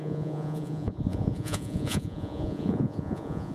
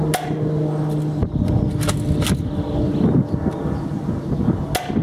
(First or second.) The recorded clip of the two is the second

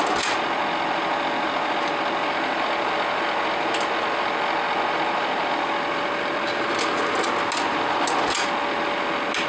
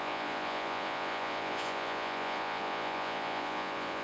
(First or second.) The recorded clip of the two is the first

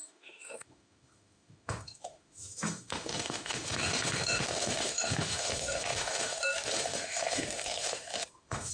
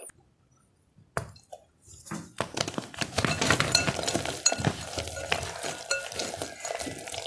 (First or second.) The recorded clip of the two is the second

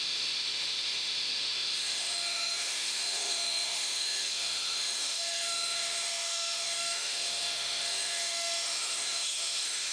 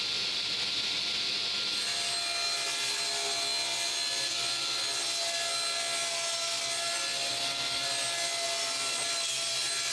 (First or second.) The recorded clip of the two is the second